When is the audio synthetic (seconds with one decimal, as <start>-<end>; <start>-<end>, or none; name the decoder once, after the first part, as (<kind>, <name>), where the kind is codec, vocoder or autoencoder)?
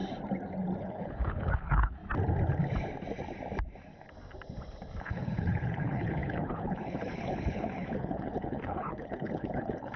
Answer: 0.8-2.0 (codec, HILCodec); 5.0-10.0